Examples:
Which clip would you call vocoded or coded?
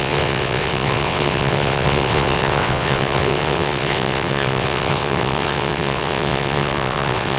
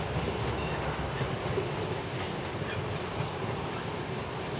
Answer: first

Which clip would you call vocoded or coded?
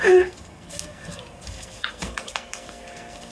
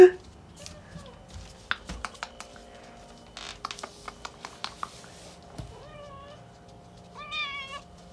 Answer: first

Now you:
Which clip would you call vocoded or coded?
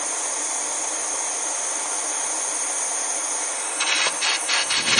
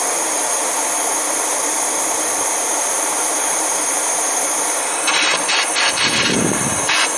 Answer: second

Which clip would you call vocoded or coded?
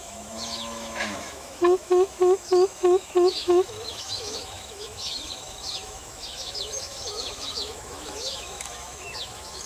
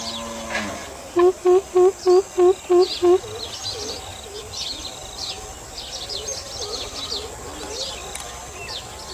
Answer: first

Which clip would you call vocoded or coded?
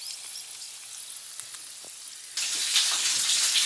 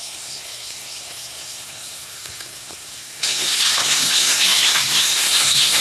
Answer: second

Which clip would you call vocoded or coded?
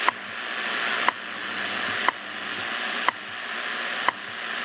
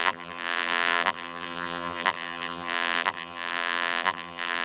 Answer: second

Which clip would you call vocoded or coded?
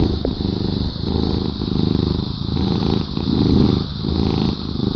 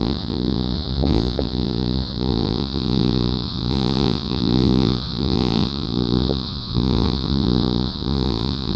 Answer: second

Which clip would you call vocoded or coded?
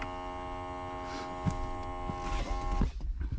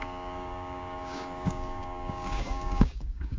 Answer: second